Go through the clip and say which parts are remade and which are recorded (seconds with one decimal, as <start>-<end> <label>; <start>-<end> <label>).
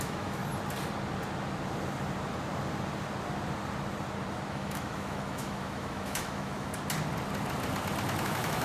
0.0-0.4 remade; 0.4-4.5 recorded; 4.5-6.7 remade; 6.7-8.2 recorded; 8.2-8.6 remade